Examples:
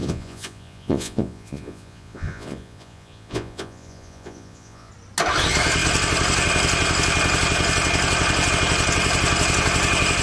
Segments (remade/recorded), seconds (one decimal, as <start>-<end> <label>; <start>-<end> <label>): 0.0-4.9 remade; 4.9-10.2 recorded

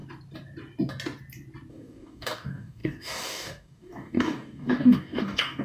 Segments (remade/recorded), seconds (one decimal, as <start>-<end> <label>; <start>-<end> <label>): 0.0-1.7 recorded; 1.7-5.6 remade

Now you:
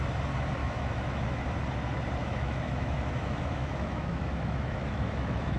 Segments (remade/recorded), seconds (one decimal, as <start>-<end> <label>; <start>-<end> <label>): 0.0-0.6 recorded; 0.6-1.4 remade; 1.4-2.2 recorded; 2.2-5.6 remade

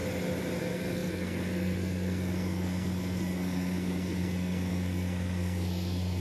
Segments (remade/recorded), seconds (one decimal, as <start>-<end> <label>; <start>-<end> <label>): 0.0-0.6 recorded; 0.6-6.2 remade

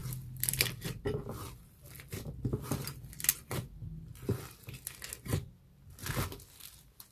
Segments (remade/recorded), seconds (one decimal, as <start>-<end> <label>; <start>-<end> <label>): 0.0-3.0 remade; 3.0-7.1 recorded

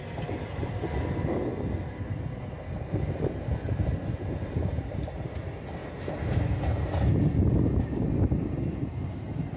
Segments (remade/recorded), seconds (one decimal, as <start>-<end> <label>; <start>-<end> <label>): 0.0-9.6 recorded

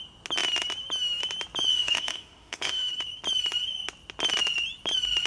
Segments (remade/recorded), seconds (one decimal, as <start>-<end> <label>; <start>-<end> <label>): 0.0-1.7 recorded; 1.7-2.9 remade; 2.9-5.3 recorded